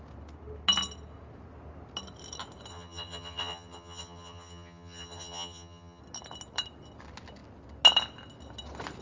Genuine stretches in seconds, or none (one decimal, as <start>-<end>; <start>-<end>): 0.0-2.7; 6.0-9.0